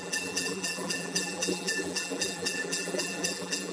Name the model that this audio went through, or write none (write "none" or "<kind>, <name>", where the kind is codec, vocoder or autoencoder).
vocoder, BigVGAN v2